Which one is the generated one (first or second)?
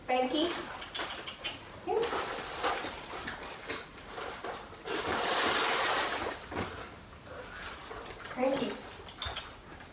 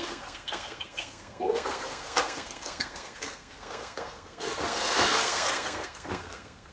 second